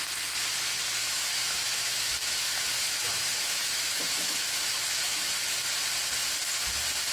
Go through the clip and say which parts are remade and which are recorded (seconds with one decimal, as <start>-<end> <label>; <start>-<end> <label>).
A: 0.0-1.0 recorded; 1.0-5.3 remade; 5.3-7.1 recorded